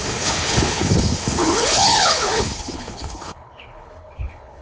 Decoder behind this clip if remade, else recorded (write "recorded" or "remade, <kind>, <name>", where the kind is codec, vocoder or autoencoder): remade, codec, HILCodec